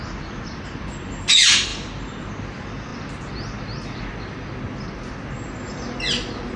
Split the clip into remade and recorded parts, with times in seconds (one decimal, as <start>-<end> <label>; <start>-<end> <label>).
0.0-6.6 recorded